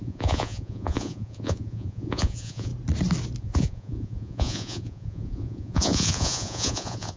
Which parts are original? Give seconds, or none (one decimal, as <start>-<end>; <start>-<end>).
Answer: 2.7-3.4